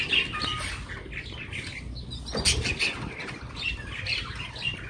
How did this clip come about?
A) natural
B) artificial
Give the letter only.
A